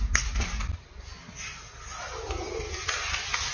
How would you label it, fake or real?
real